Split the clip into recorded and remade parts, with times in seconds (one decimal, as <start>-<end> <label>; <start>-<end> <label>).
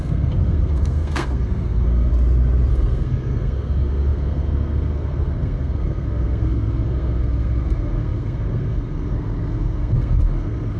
0.0-2.1 remade; 2.1-2.7 recorded; 2.7-10.8 remade